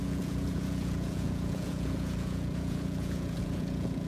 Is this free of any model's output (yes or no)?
no